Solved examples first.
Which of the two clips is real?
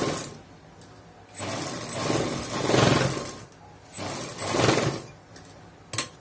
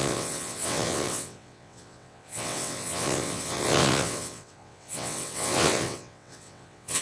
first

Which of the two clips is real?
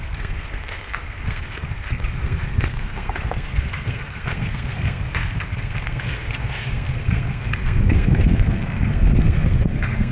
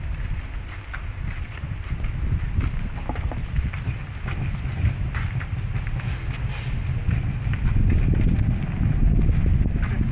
second